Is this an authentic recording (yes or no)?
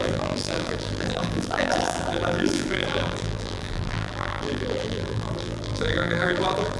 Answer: no